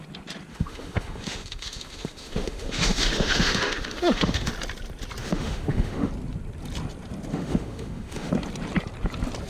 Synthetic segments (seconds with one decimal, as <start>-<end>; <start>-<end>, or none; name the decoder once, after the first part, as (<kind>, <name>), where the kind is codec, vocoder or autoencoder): 0.5-4.5 (autoencoder, DAC-VAE); 5.2-6.1; 7.3-8.3